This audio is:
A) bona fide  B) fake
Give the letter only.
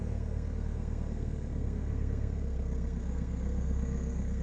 B